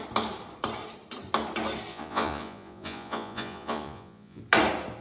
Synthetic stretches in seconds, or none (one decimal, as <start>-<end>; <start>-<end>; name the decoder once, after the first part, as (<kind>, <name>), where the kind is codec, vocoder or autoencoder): 1.9-4.4 (vocoder, Vocos)